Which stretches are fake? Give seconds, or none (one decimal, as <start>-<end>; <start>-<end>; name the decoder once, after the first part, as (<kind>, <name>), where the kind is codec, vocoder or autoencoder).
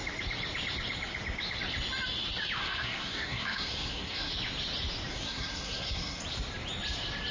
2.6-4.3 (codec, SNAC); 5.1-6.2